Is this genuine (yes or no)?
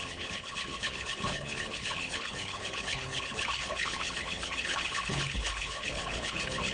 no